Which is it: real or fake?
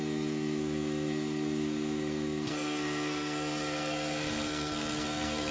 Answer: fake